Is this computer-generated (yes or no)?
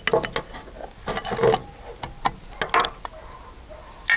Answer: no